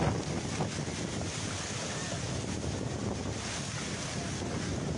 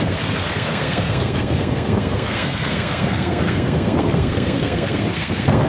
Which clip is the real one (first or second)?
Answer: first